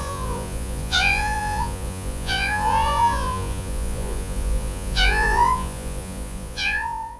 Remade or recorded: remade